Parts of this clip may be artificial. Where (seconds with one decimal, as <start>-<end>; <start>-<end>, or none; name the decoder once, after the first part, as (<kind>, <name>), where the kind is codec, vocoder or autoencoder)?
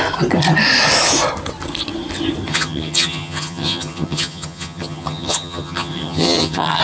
2.5-6.8 (vocoder, HiFi-GAN)